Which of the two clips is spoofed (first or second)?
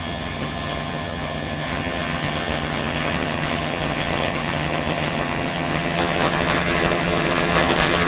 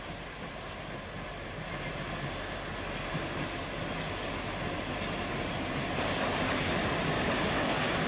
first